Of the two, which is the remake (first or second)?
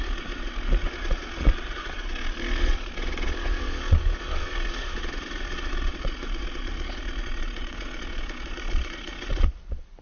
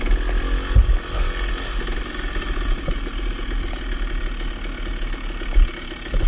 first